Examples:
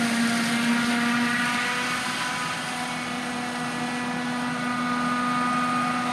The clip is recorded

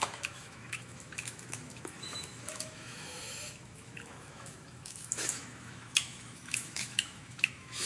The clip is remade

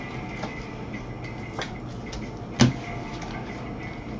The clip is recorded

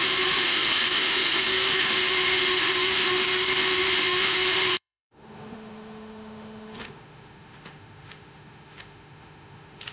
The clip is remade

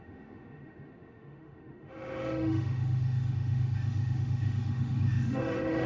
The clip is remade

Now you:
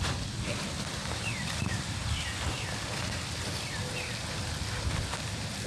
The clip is recorded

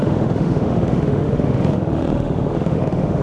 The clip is remade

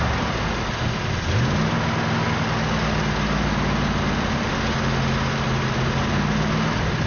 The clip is recorded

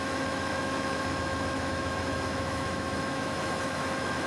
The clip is remade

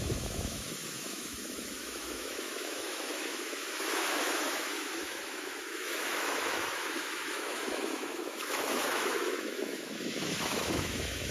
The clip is remade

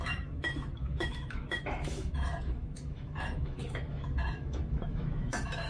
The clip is remade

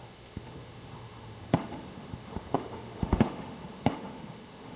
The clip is remade